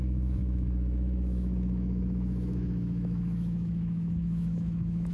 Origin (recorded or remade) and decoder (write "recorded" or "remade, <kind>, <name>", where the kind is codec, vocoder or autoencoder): remade, autoencoder, DAC-VAE